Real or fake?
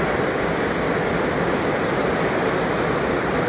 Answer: fake